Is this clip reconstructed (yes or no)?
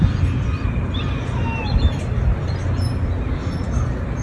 no